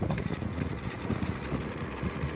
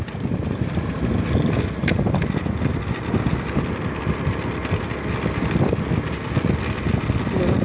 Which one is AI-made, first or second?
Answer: first